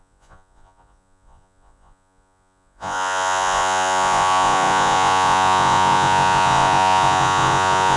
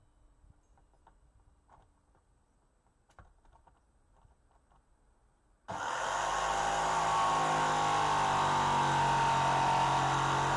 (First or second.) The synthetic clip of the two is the first